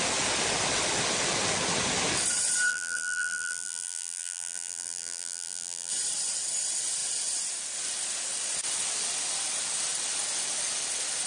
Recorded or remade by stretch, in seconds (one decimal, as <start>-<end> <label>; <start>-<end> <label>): 0.0-2.7 recorded; 2.7-5.9 remade; 5.9-11.3 recorded